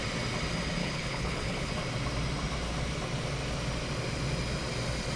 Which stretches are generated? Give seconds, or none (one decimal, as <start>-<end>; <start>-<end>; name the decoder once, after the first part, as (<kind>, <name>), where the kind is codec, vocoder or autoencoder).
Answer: 0.8-1.7 (codec, HILCodec)